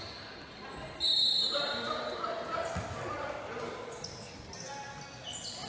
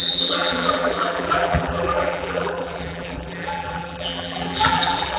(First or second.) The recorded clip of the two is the first